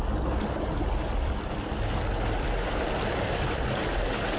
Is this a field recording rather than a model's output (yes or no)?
yes